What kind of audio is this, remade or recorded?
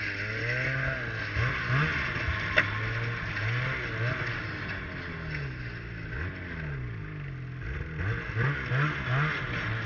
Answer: recorded